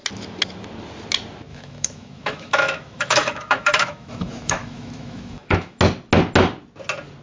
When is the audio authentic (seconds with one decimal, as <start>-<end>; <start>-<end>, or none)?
0.0-1.5; 5.8-7.2